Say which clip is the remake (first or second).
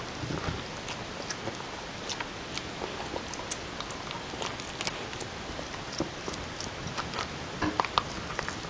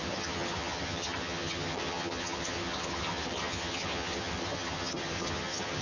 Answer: second